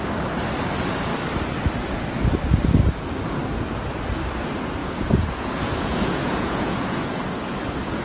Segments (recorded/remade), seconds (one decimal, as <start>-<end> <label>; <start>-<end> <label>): 0.0-4.8 recorded; 4.8-7.2 remade; 7.2-8.0 recorded